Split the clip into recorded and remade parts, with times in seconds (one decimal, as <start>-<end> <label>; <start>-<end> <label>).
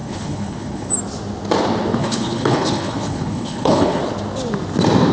0.0-0.9 remade; 0.9-2.0 recorded; 2.0-4.0 remade; 4.0-5.1 recorded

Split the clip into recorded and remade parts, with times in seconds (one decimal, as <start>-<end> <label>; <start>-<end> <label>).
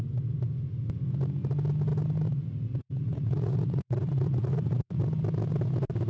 0.0-2.8 recorded; 2.8-5.0 remade; 5.0-6.1 recorded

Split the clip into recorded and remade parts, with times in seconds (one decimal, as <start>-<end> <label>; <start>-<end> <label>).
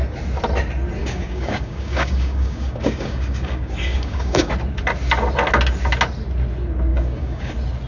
0.0-1.0 recorded; 1.0-4.5 remade; 4.5-6.9 recorded; 6.9-7.5 remade; 7.5-7.9 recorded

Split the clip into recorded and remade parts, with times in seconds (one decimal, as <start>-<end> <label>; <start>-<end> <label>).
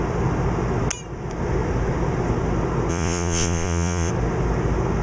0.0-2.9 recorded; 2.9-4.1 remade; 4.1-5.0 recorded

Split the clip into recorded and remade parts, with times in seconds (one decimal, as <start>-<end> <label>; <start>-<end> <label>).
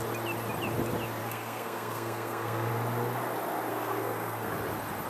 0.0-1.2 recorded; 1.2-2.7 remade; 2.7-3.7 recorded; 3.7-4.5 remade; 4.5-5.1 recorded